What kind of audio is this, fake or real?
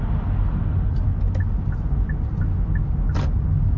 real